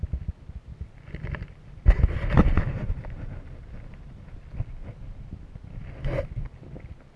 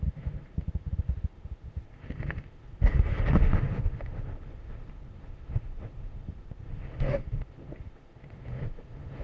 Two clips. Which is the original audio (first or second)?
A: first